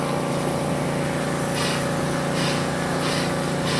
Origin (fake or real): real